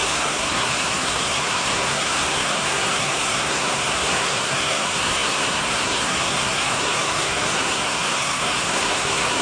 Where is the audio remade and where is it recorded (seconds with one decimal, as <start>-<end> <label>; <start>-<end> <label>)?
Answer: 0.0-9.4 remade